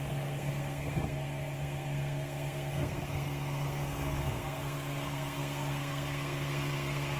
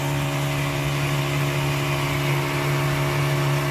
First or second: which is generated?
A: first